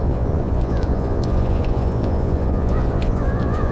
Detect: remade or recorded remade